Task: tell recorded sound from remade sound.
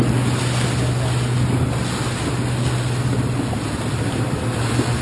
recorded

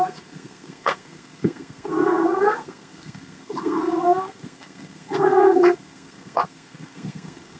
remade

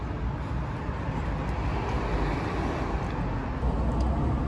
recorded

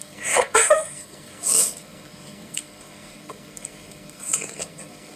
remade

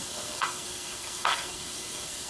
remade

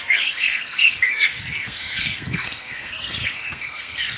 remade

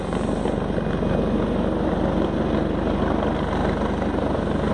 recorded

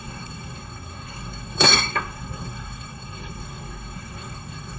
remade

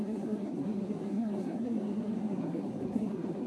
remade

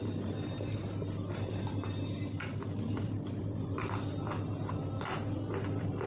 recorded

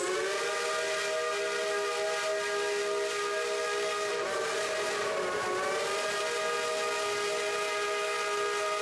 recorded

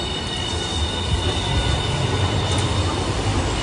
recorded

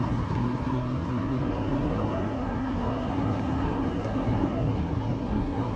remade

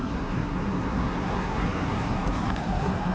remade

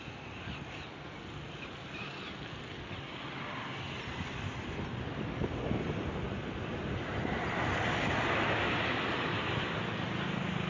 recorded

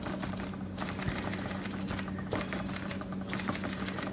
recorded